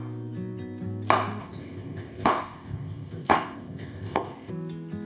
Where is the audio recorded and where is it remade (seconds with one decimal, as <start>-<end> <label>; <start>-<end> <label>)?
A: 0.0-1.4 recorded; 1.4-4.5 remade; 4.5-5.1 recorded